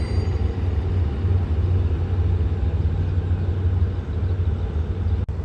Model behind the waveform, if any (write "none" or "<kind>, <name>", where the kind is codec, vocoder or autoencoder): none